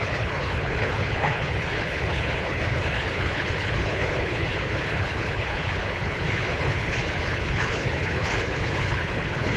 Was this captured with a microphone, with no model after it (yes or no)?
no